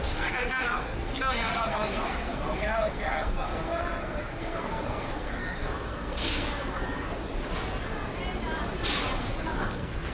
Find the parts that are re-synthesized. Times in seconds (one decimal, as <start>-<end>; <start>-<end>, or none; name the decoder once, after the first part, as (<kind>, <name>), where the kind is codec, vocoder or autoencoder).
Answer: 0.0-7.2 (codec, SNAC); 9.2-10.1